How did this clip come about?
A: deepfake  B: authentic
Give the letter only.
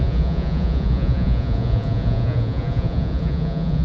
A